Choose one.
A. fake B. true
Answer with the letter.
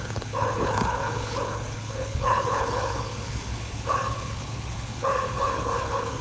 A